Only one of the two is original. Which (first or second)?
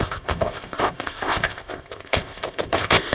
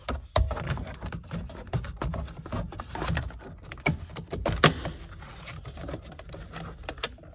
second